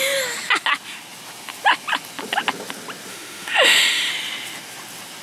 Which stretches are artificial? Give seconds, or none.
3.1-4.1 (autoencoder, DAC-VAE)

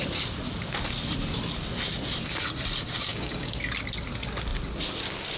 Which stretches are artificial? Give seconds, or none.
3.1-3.6 (codec, DAC)

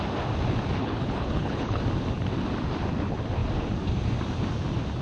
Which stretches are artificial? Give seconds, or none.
0.8-1.8 (codec, HILCodec)

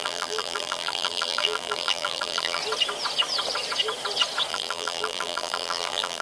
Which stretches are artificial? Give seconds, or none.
0.0-2.6 (vocoder, BigVGAN v2); 4.5-6.2

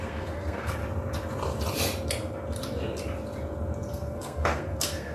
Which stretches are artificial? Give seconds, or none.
0.0-0.8 (codec, SNAC); 3.9-5.1

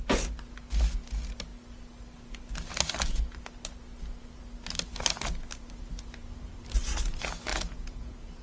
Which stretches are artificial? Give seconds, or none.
7.5-8.4 (vocoder, Vocos)

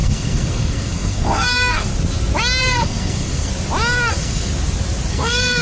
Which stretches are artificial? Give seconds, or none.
0.0-1.9 (codec, SNAC); 2.6-3.5; 4.1-4.5; 5.1-5.6

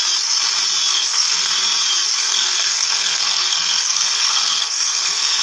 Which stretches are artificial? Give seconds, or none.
0.9-1.5 (codec, SNAC); 2.2-5.4